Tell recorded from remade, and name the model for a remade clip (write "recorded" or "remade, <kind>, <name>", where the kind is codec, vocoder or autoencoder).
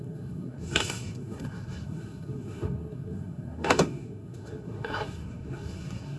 remade, codec, SNAC